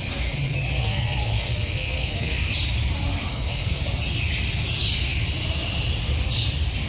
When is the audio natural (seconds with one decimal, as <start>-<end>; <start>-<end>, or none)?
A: 0.0-0.8; 2.5-3.3; 3.8-6.9